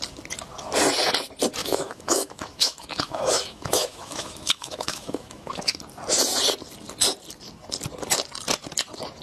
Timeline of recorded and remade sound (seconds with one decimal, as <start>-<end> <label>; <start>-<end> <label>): 0.0-1.6 recorded; 1.6-5.8 remade; 5.8-9.2 recorded